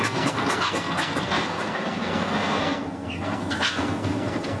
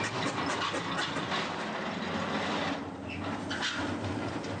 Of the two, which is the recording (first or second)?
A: second